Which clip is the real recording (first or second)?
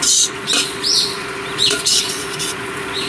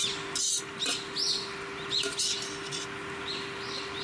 second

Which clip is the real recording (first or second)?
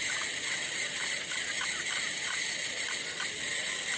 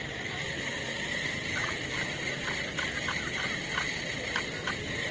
first